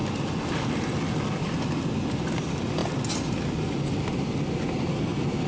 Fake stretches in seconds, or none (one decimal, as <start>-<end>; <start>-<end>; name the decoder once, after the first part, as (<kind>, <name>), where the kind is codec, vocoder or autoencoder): none